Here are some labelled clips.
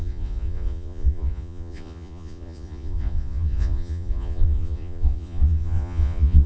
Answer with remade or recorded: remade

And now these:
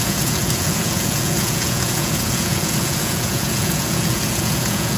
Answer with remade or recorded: remade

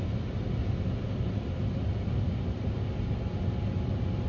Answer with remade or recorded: recorded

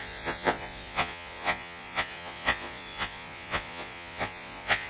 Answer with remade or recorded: remade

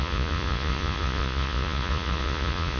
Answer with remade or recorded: remade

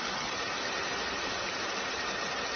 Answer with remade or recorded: recorded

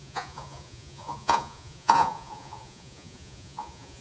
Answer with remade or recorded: remade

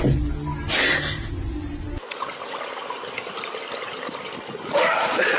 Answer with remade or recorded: recorded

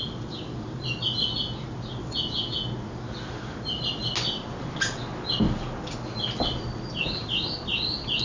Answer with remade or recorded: recorded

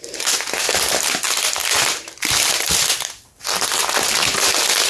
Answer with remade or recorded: recorded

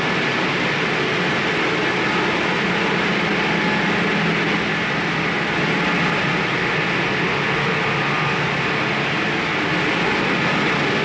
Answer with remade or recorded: recorded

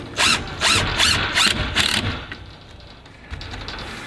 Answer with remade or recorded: recorded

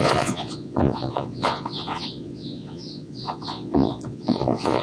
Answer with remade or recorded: remade